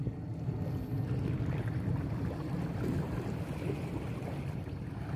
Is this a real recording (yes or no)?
yes